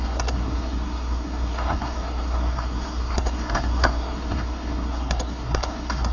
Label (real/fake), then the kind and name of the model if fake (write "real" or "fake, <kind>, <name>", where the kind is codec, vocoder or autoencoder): fake, codec, SNAC